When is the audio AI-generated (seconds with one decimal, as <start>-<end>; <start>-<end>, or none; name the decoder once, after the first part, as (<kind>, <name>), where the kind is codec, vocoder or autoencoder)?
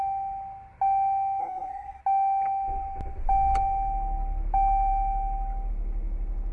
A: 1.4-2.0 (codec, SNAC)